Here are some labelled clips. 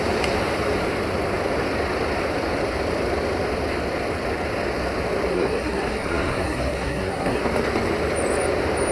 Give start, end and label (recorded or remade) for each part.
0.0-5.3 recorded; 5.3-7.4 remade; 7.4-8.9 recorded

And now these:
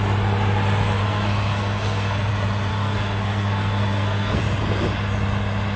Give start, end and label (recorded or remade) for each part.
0.0-1.0 recorded; 1.0-2.3 remade; 2.3-2.7 recorded; 2.7-4.4 remade; 4.4-5.8 recorded

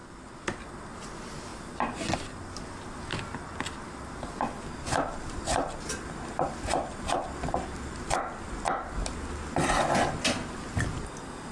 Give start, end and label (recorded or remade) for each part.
0.0-11.5 recorded

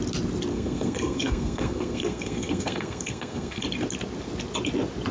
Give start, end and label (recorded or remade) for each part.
0.0-0.5 recorded; 0.5-3.6 remade; 3.6-5.1 recorded

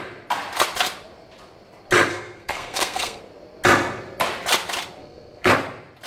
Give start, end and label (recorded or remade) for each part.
0.0-2.1 recorded; 2.1-3.2 remade; 3.2-5.0 recorded; 5.0-5.5 remade; 5.5-6.1 recorded

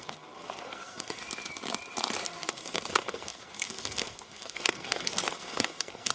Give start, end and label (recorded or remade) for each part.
0.0-1.2 remade; 1.2-2.5 recorded; 2.5-6.1 remade

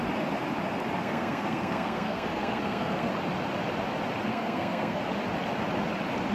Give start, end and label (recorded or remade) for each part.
0.0-1.0 recorded; 1.0-3.1 remade; 3.1-4.3 recorded; 4.3-5.0 remade; 5.0-6.3 recorded

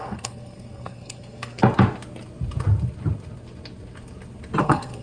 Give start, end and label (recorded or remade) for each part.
0.0-1.6 remade; 1.6-4.6 recorded; 4.6-5.0 remade